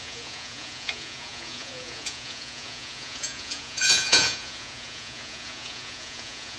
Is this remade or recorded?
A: remade